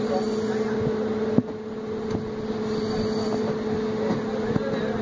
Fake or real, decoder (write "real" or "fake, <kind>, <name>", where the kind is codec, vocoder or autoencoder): real